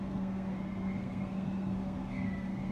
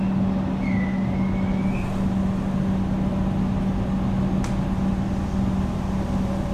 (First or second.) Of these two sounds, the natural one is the second